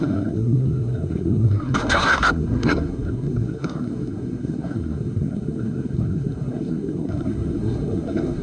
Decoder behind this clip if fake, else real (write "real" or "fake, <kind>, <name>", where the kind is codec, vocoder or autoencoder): fake, codec, SNAC